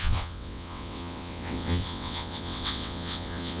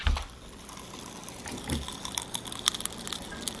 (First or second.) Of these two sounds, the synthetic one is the first